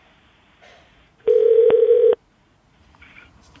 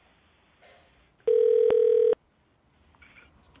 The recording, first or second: second